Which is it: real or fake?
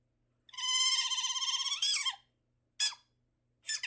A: real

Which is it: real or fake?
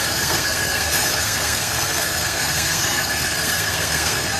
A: fake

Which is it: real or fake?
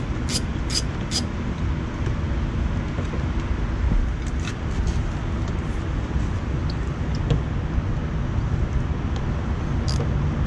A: real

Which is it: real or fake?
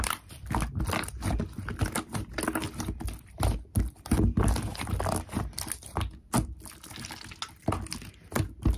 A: real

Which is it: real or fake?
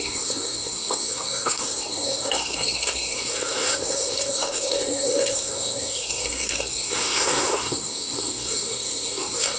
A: fake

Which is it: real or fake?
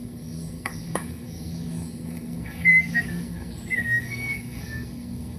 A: fake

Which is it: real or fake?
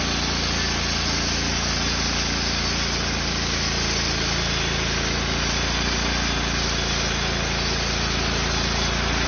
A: real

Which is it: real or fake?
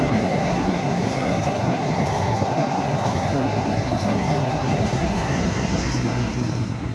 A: fake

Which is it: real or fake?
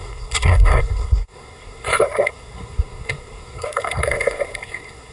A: fake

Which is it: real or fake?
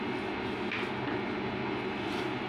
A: real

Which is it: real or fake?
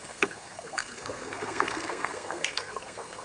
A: fake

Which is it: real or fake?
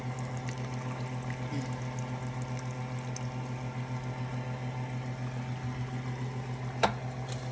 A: real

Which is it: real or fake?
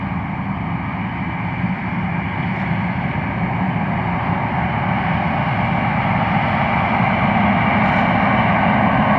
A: real